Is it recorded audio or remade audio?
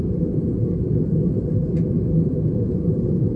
recorded